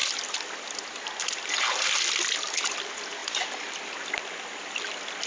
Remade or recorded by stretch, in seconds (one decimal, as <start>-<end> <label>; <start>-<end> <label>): 0.0-5.3 recorded